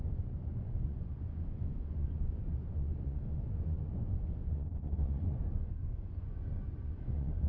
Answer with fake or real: fake